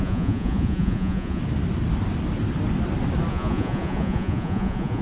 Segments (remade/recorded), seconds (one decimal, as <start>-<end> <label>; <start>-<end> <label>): 0.0-1.4 remade; 1.4-3.3 recorded; 3.3-5.0 remade